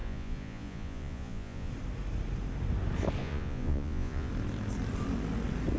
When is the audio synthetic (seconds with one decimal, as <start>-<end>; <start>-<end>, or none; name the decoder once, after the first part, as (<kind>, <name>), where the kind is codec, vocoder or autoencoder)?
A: 0.0-1.7 (vocoder, Vocos); 3.2-4.3

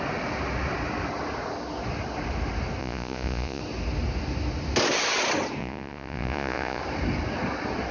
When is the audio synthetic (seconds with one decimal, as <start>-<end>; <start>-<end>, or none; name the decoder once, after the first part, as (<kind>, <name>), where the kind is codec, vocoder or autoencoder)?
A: 2.8-3.6 (vocoder, Vocos); 5.6-6.8

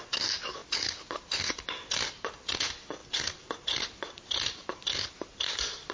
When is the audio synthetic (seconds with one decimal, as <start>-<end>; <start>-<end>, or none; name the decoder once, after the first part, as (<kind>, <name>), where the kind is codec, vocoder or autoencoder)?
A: none

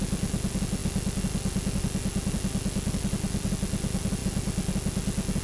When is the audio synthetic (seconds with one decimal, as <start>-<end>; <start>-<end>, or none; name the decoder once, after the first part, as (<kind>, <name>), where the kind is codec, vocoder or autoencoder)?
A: none

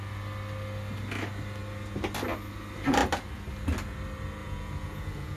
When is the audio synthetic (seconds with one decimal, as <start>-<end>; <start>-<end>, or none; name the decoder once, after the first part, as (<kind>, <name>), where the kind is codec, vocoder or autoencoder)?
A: 4.4-5.4 (vocoder, Vocos)